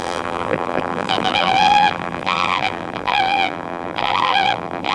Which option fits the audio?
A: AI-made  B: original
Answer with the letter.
A